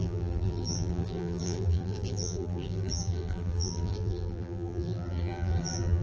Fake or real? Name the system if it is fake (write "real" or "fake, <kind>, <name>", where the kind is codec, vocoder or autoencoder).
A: fake, vocoder, BigVGAN v2